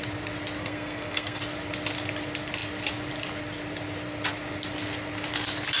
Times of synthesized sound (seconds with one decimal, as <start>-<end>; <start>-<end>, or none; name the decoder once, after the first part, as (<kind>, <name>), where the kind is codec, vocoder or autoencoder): 0.6-1.4 (codec, SNAC)